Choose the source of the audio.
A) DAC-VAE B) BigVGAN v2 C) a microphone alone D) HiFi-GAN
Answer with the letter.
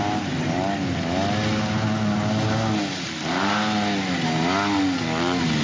C